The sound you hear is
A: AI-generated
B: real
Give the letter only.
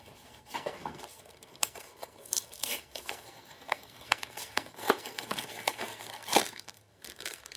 A